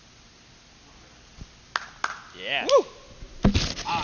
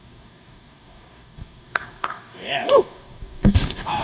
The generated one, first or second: second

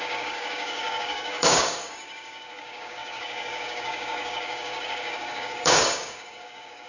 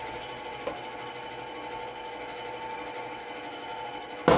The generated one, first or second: first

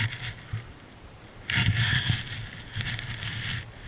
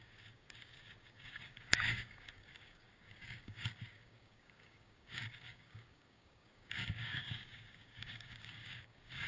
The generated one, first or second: second